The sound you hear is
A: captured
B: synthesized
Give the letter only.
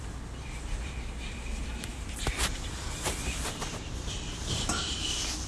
B